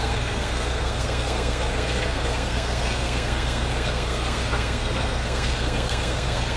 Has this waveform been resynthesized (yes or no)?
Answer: yes